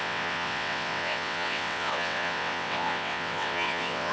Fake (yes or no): yes